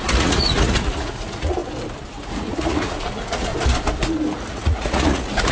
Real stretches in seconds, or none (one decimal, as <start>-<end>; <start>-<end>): 1.6-2.1; 3.5-4.5